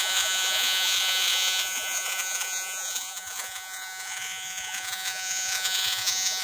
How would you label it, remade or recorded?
remade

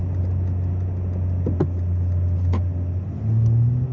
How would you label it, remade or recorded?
recorded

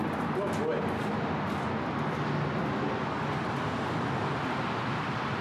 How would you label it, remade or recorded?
recorded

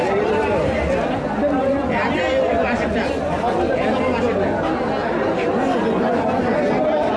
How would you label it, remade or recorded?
recorded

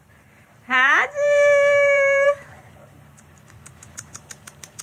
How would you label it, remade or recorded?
remade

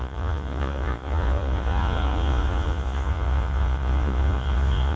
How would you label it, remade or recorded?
remade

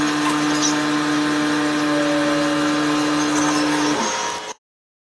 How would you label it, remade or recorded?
recorded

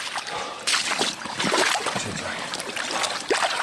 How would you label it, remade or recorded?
recorded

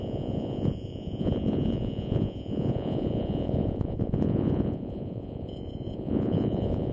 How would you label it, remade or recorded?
remade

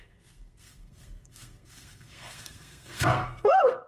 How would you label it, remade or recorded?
remade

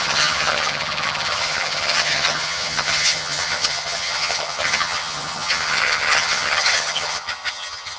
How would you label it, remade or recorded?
remade